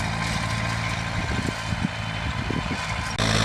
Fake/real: real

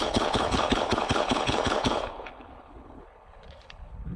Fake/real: fake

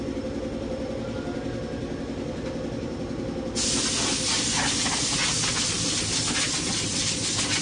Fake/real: real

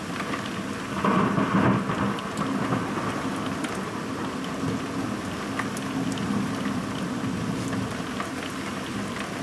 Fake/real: real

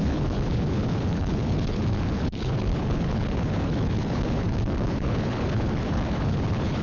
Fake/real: fake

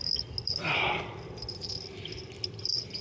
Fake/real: real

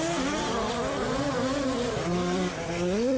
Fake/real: real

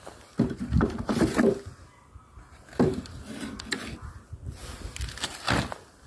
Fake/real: real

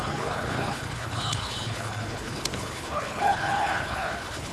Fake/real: fake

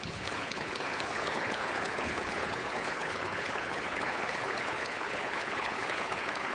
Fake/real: fake